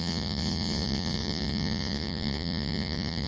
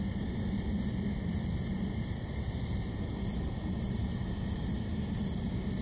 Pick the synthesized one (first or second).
first